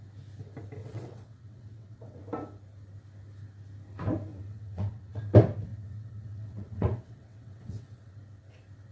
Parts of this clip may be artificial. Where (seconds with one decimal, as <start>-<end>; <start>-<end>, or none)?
0.8-2.2; 4.3-5.2; 5.7-8.1